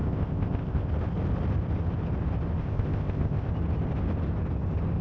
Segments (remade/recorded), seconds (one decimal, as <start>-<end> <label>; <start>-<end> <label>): 0.0-0.9 remade; 0.9-2.6 recorded; 2.6-3.5 remade; 3.5-5.0 recorded